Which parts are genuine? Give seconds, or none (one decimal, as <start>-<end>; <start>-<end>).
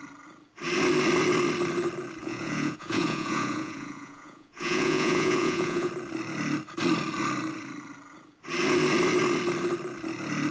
0.0-2.2; 5.9-10.5